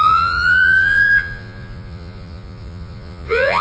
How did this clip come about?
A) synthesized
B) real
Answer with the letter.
A